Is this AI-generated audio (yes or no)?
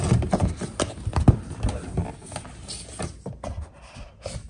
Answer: no